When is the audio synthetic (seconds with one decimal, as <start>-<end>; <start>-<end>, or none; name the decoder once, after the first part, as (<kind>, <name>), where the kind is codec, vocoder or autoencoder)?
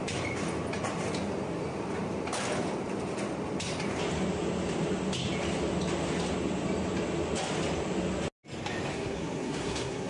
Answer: 8.9-10.1 (codec, SNAC)